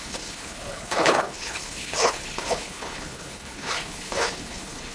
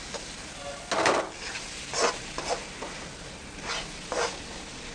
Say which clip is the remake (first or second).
first